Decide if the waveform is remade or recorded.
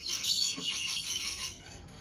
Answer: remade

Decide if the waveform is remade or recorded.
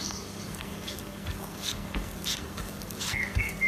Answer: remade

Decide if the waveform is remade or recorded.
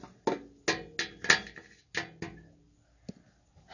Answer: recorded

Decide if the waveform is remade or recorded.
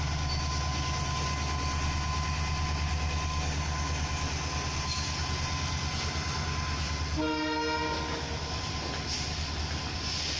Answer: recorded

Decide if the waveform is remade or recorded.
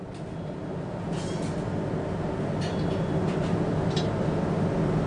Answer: recorded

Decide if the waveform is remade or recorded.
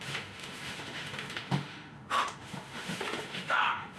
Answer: remade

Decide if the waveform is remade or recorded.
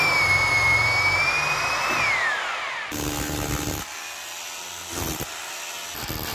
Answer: recorded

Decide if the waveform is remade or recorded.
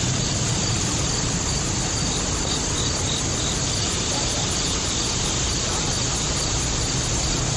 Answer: recorded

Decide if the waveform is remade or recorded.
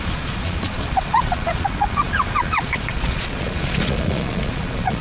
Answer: remade